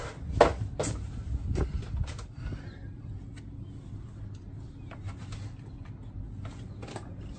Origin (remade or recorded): recorded